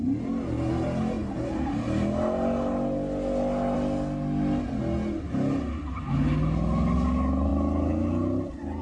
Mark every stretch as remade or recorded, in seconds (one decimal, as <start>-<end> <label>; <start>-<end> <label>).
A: 0.0-8.8 recorded